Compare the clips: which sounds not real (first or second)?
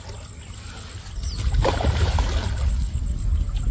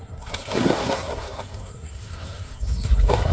second